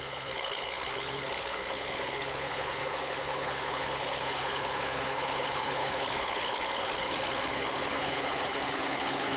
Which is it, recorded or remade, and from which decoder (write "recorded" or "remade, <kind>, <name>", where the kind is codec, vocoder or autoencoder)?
remade, codec, HILCodec